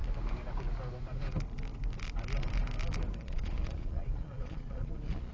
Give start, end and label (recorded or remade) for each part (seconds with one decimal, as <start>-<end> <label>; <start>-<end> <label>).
0.0-3.2 recorded; 3.2-5.3 remade